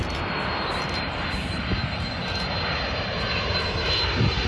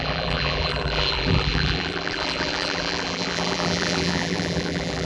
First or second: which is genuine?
first